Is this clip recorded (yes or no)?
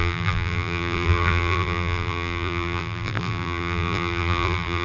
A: no